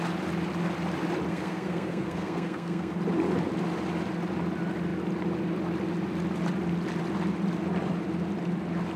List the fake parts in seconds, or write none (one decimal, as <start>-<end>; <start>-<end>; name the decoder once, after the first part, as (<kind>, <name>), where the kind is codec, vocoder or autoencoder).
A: 1.3-2.9 (codec, SNAC)